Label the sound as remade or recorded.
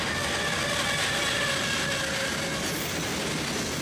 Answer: recorded